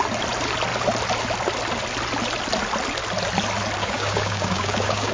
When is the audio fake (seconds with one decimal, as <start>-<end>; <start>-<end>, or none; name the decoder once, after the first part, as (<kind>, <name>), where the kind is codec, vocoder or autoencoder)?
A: 3.8-5.1 (codec, DAC)